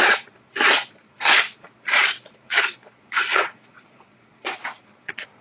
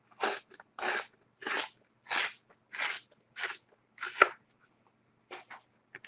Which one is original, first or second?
second